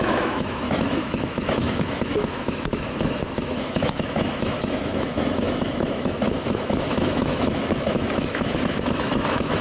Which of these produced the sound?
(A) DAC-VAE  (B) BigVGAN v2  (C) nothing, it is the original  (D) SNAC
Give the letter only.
A